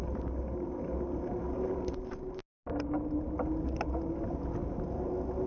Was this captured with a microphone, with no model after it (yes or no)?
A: yes